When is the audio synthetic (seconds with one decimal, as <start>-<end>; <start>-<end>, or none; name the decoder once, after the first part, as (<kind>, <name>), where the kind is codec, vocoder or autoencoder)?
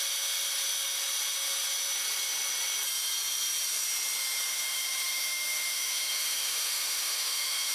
4.5-7.7 (autoencoder, DAC-VAE)